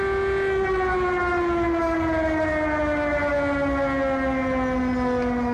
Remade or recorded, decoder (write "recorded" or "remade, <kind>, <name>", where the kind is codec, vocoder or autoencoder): recorded